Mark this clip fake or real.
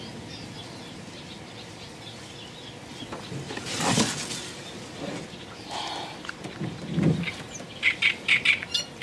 real